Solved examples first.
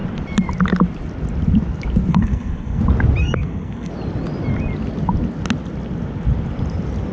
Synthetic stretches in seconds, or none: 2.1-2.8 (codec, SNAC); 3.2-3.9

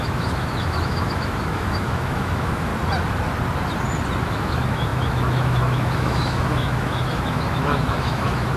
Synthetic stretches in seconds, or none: 0.0-2.7 (autoencoder, DAC-VAE); 4.2-8.6

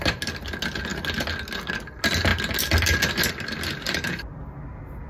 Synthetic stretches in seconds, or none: none

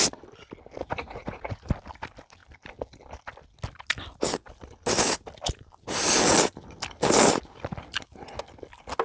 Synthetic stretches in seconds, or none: 0.8-1.7 (vocoder, Vocos)

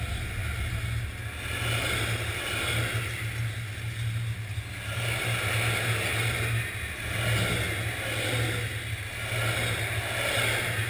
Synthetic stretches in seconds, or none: none